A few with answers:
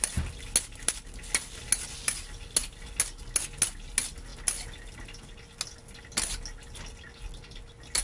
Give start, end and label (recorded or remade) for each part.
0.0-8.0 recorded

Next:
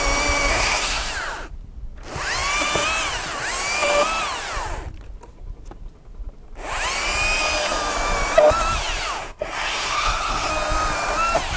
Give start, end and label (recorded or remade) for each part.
0.0-0.5 recorded; 0.5-1.1 remade; 1.1-9.2 recorded; 9.2-10.5 remade; 10.5-11.6 recorded

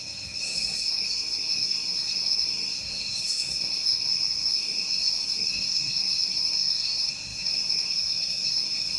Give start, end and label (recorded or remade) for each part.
0.0-9.0 remade

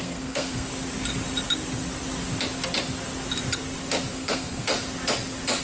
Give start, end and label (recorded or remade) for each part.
0.0-0.7 remade; 0.7-4.1 recorded; 4.1-4.7 remade; 4.7-5.6 recorded

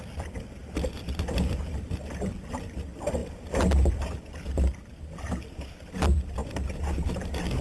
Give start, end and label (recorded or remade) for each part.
0.0-7.6 recorded